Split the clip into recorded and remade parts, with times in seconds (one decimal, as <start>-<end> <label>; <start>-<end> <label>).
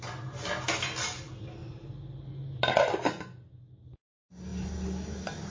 0.0-5.5 recorded